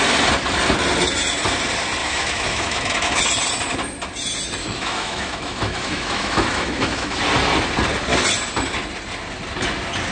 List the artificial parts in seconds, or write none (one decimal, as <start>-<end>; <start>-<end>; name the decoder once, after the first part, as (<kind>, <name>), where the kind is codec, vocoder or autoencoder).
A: 2.0-3.2 (autoencoder, DAC-VAE); 4.6-7.2

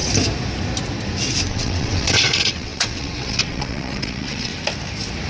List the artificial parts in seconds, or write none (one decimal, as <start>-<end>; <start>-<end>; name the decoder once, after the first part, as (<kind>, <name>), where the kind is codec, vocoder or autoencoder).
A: 1.5-4.5 (vocoder, WaveNeXt)

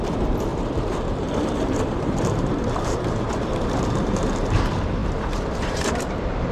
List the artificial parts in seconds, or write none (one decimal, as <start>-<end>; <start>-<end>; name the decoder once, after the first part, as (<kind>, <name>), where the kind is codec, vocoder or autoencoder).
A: 0.0-6.5 (vocoder, BigVGAN v2)

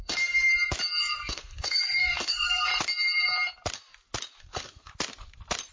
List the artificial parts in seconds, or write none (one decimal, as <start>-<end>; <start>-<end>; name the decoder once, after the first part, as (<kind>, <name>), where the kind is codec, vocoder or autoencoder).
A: 0.0-0.5 (codec, SNAC); 1.0-2.7; 4.4-4.9

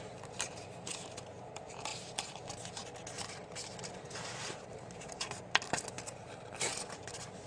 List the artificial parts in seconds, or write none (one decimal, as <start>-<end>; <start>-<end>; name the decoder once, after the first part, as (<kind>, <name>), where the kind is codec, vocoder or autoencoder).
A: 0.0-2.8 (vocoder, BigVGAN v2); 3.8-7.5

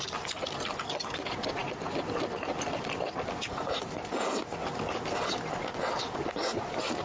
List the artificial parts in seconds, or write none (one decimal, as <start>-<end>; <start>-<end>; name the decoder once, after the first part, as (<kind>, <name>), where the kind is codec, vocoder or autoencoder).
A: none